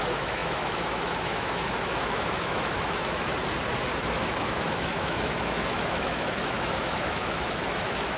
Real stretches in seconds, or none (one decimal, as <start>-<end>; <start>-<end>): 3.3-4.2